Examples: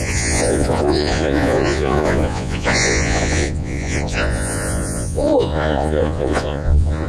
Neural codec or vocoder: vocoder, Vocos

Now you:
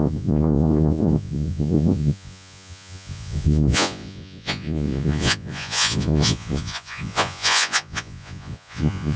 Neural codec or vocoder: vocoder, Vocos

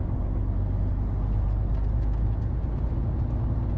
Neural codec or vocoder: none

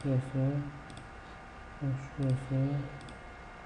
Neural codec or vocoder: none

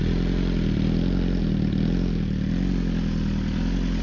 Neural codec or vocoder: none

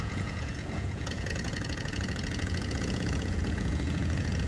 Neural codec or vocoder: vocoder, Vocos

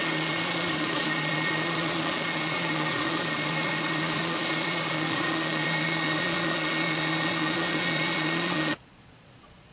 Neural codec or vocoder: vocoder, Vocos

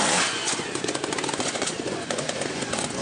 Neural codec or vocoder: vocoder, Vocos